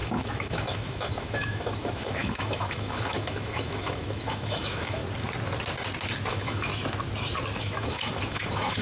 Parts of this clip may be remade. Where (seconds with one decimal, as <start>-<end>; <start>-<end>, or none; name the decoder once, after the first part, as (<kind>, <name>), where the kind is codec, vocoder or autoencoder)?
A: 0.0-5.0 (autoencoder, DAC-VAE); 6.3-6.7; 7.6-8.8